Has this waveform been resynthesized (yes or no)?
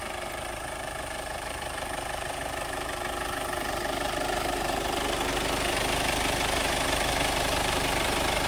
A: yes